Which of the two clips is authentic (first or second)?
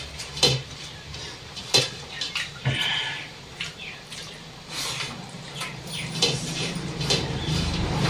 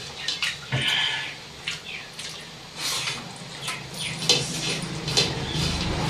second